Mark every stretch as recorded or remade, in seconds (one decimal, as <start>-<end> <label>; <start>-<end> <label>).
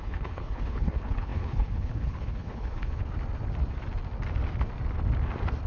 0.0-3.0 remade; 3.0-5.7 recorded